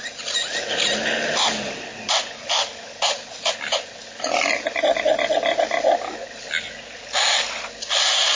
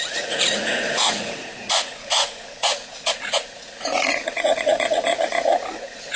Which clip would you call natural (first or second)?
first